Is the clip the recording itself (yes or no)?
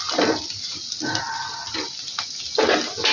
yes